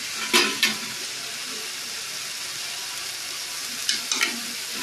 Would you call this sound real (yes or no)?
yes